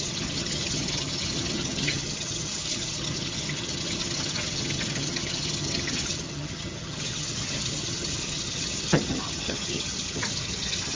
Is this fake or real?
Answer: fake